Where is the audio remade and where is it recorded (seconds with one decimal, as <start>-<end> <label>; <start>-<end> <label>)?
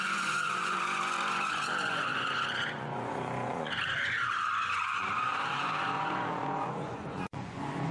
0.0-7.9 remade